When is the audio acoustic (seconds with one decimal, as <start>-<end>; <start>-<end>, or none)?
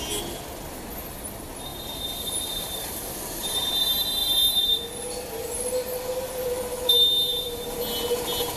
0.0-1.7; 3.7-4.2; 4.9-7.3; 7.8-8.6